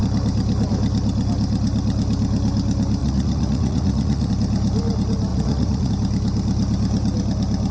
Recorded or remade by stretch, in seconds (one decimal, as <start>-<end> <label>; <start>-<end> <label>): 0.0-3.0 recorded; 3.0-4.3 remade; 4.3-5.3 recorded; 5.3-5.9 remade; 5.9-7.7 recorded